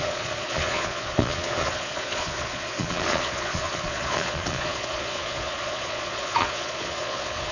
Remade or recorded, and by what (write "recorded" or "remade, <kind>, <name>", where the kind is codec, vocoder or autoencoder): remade, vocoder, Vocos